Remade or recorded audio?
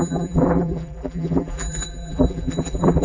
remade